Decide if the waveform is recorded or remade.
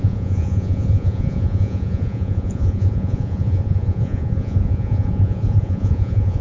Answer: remade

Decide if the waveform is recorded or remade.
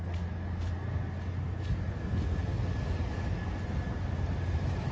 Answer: recorded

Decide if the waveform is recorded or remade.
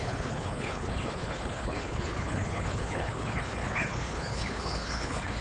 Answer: remade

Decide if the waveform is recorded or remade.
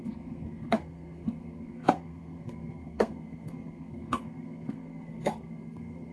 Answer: remade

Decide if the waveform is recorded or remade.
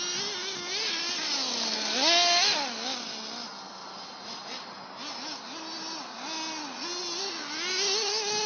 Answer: recorded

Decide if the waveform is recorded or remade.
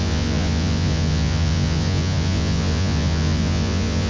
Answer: remade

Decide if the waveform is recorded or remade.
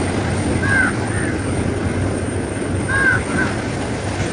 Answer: recorded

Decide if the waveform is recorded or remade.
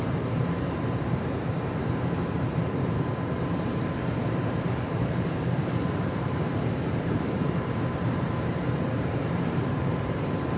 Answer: remade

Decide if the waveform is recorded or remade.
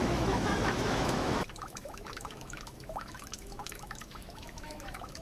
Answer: remade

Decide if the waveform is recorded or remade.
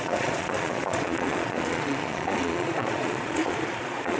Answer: remade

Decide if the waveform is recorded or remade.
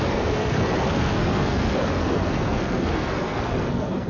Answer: remade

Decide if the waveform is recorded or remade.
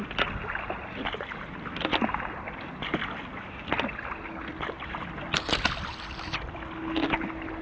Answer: recorded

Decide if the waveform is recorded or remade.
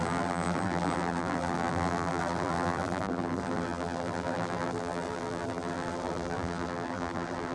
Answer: remade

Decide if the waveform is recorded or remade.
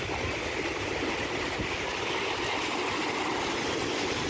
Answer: recorded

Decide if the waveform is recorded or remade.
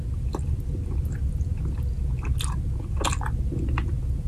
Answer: recorded